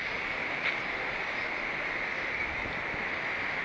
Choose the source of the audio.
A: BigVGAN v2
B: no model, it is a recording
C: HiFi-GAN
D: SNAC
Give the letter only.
B